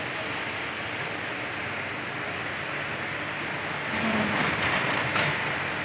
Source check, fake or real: real